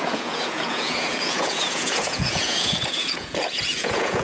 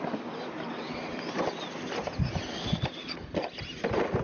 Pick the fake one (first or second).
first